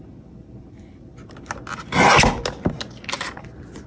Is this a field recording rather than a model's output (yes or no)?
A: yes